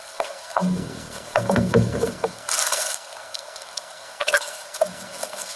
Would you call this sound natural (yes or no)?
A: no